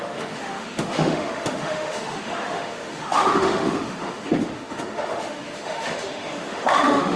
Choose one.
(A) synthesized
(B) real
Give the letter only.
A